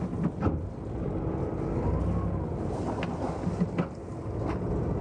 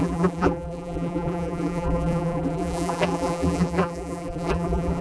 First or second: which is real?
first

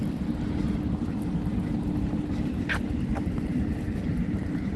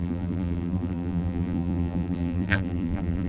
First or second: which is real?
first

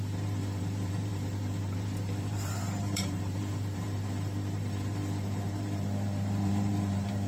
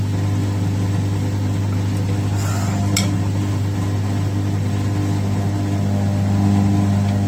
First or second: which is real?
second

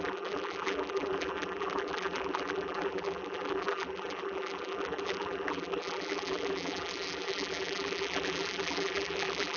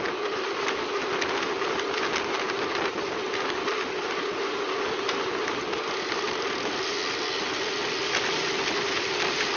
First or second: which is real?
second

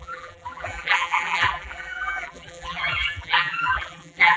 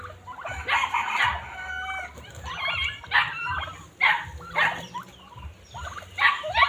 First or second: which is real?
second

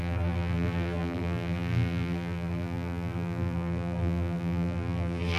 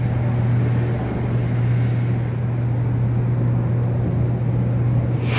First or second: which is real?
second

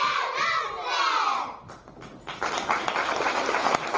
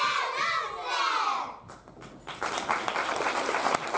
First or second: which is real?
second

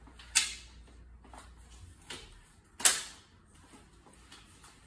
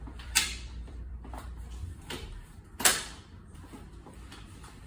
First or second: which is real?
first